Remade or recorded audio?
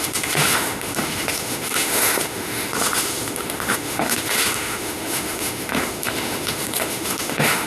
remade